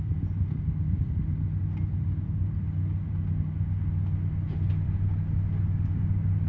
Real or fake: real